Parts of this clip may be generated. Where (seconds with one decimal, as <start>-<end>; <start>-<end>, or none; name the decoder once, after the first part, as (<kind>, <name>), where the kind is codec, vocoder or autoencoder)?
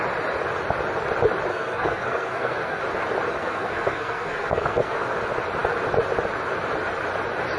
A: 1.5-2.8 (codec, SNAC); 3.4-5.0